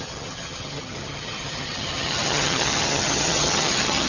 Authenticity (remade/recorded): remade